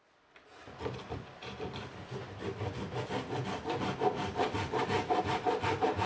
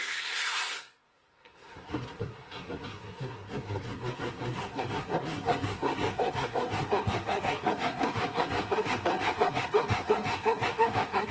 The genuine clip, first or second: first